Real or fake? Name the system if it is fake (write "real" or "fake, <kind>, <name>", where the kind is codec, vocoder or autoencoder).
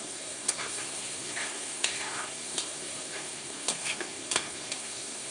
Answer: fake, codec, SNAC